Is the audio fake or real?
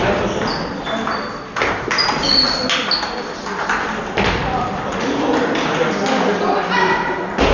real